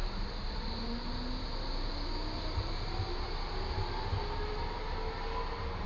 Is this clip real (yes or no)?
yes